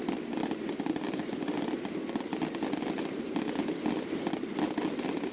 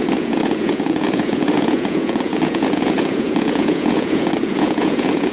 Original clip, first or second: first